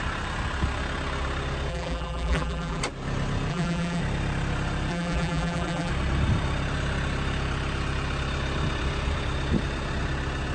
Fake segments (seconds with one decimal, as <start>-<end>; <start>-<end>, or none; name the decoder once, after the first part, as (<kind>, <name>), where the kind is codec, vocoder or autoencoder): 1.7-2.8 (vocoder, BigVGAN v2); 3.5-4.0; 4.9-5.9